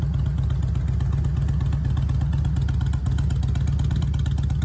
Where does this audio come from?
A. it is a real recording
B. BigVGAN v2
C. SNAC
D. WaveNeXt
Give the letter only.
A